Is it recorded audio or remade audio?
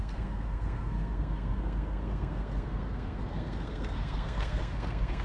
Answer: remade